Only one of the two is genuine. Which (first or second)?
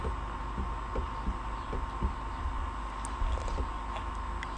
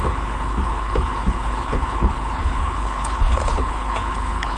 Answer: first